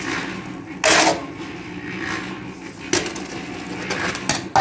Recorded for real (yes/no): yes